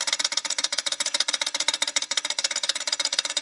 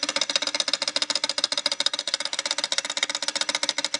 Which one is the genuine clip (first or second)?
second